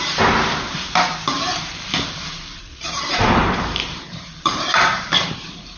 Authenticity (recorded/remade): remade